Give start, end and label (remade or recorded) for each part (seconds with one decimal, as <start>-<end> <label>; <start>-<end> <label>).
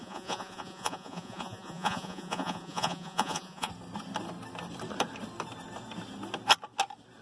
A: 0.0-3.7 remade; 3.7-7.2 recorded